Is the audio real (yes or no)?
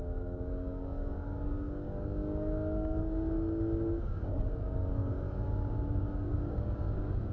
no